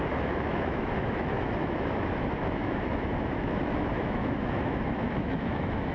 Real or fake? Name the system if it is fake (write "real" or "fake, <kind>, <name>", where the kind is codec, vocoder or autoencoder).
fake, autoencoder, DAC-VAE